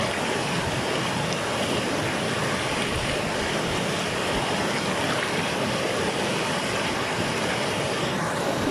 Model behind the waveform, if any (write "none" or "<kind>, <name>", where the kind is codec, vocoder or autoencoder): none